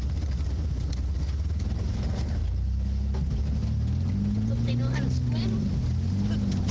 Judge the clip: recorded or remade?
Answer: recorded